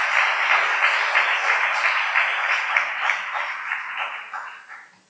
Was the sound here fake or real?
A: real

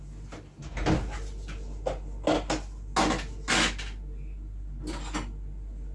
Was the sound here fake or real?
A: real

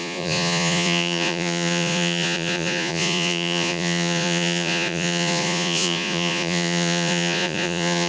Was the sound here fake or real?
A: fake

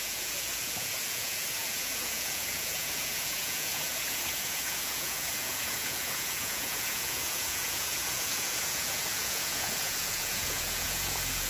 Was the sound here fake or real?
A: fake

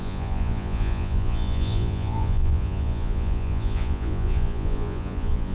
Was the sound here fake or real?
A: fake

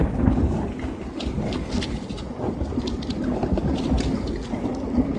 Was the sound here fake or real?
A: real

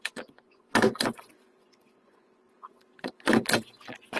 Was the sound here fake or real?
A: fake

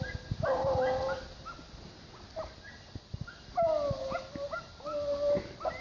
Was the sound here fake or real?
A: real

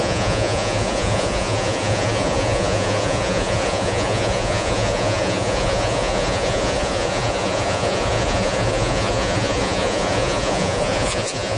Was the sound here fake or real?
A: fake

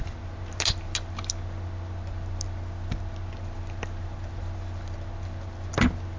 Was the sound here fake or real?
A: real